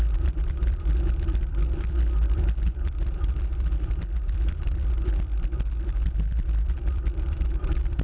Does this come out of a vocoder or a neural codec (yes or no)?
yes